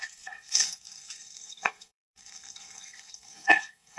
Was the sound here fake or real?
fake